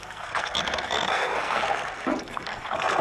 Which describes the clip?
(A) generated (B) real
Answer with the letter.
A